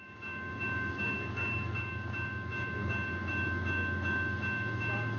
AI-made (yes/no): yes